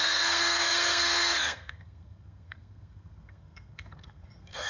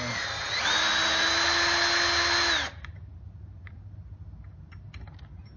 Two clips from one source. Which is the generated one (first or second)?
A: first